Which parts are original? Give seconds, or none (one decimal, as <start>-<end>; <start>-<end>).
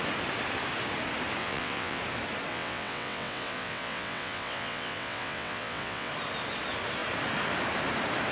0.0-1.4; 2.0-2.5; 6.1-8.3